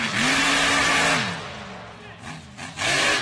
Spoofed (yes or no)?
no